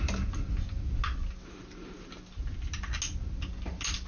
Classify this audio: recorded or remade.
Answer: recorded